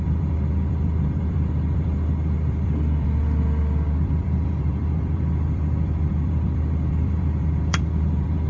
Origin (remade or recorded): remade